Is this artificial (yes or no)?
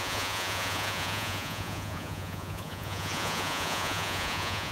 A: yes